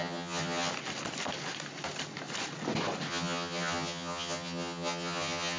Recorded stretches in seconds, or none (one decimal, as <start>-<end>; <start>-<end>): 0.7-3.1